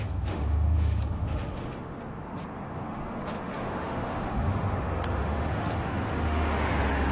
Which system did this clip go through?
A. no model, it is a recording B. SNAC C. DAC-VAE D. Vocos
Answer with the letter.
C